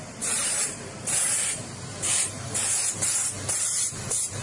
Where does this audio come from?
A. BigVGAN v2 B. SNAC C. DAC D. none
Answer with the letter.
A